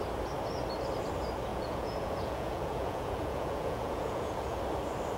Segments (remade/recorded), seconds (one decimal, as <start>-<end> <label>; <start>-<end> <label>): 0.0-1.5 recorded; 1.5-4.6 remade; 4.6-5.2 recorded